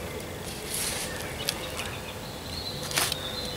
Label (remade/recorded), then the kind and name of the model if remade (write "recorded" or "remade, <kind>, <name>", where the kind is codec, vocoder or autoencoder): recorded